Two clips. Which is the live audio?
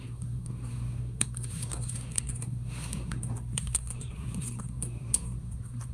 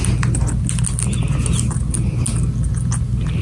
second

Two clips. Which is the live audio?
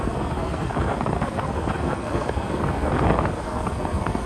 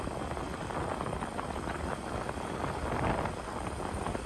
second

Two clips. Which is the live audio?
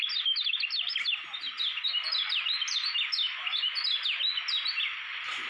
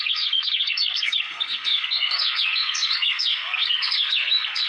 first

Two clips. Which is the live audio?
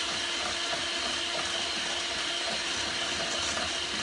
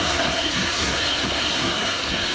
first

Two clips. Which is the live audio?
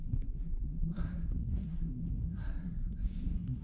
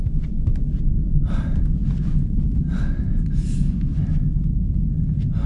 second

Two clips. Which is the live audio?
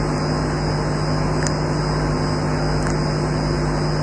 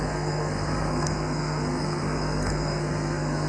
first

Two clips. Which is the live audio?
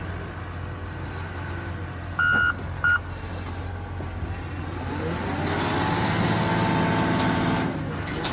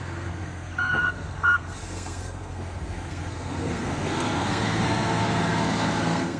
first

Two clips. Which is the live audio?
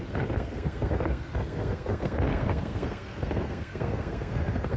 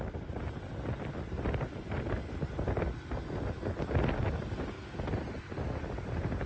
second